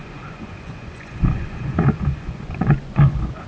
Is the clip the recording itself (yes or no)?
no